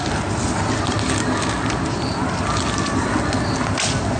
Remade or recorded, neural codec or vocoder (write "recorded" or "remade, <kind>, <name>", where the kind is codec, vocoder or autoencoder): recorded